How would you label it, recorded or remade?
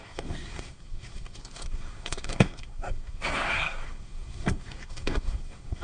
remade